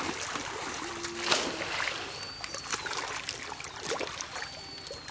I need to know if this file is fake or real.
real